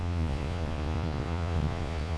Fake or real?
fake